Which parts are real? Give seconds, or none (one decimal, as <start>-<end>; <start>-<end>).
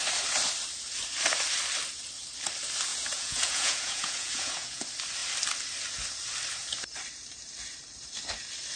0.0-2.9; 4.8-8.8